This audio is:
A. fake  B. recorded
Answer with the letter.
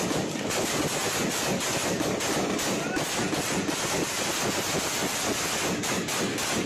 B